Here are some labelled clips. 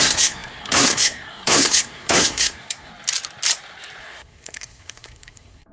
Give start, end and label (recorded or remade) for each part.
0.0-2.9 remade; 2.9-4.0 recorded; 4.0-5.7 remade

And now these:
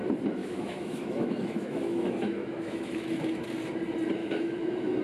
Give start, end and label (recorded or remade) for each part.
0.0-0.4 recorded; 0.4-3.4 remade; 3.4-4.2 recorded; 4.2-5.0 remade